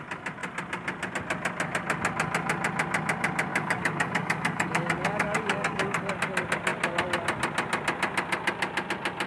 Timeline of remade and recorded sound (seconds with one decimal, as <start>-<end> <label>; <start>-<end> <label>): 0.0-3.5 recorded; 3.5-6.1 remade; 6.1-9.3 recorded